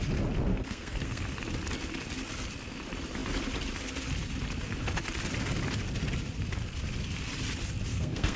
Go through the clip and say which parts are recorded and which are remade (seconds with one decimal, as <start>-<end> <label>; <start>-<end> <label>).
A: 0.0-0.5 recorded; 0.5-1.2 remade; 1.2-7.9 recorded; 7.9-8.4 remade